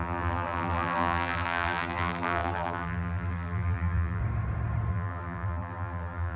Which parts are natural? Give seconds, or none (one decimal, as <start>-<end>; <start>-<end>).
4.2-4.9